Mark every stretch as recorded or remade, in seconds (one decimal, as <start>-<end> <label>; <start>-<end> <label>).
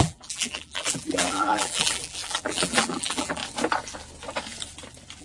0.0-3.4 remade; 3.4-5.2 recorded